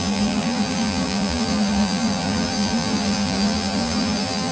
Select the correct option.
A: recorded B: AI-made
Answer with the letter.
B